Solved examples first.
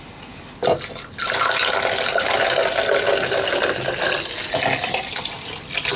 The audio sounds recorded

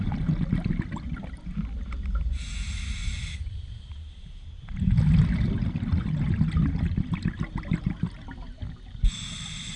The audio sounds recorded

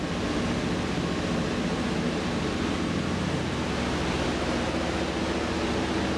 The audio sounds recorded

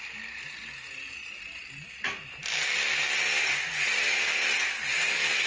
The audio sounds recorded